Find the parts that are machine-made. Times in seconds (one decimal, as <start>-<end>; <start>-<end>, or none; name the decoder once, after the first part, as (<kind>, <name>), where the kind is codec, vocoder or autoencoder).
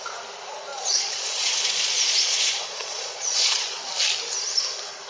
0.7-3.8 (vocoder, Vocos)